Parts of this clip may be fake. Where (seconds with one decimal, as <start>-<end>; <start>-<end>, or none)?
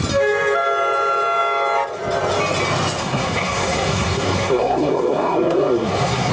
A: 3.0-6.3